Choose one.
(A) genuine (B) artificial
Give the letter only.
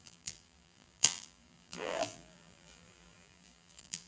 B